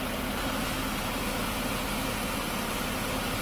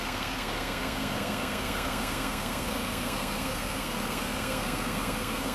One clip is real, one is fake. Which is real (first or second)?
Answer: first